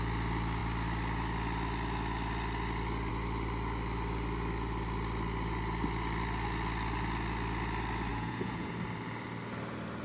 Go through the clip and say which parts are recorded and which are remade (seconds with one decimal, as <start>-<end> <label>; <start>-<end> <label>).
0.0-8.1 recorded; 8.1-8.7 remade; 8.7-10.0 recorded